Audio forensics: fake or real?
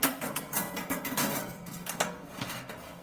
fake